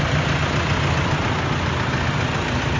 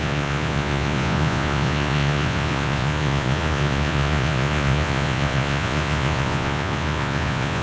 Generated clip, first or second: second